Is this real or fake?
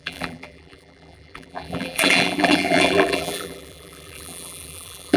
fake